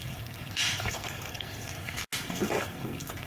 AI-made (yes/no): yes